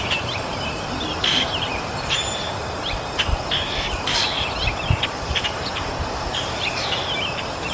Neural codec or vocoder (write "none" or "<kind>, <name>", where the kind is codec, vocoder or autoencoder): vocoder, BigVGAN v2